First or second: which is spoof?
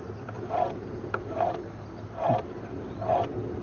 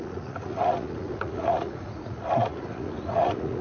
second